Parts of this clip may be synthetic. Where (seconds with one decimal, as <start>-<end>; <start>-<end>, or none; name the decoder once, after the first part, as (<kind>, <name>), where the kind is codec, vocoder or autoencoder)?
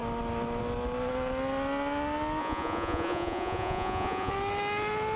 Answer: 2.4-4.3 (vocoder, Vocos)